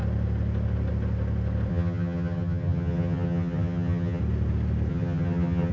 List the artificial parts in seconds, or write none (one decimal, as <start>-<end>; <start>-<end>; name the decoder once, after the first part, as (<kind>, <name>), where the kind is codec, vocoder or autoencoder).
1.7-4.2 (vocoder, HiFi-GAN); 4.9-5.7